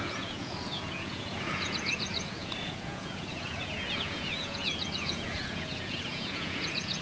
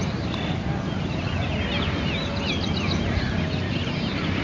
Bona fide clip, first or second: second